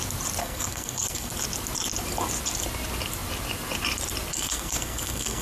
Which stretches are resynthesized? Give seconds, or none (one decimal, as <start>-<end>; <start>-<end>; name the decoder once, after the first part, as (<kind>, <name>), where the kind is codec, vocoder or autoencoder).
0.4-1.3 (codec, SNAC); 4.3-5.4